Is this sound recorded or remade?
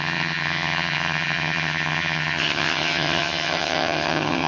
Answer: remade